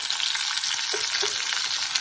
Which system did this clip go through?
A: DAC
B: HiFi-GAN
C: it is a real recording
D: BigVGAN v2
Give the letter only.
C